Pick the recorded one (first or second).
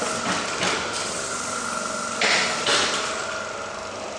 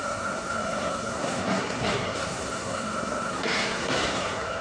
first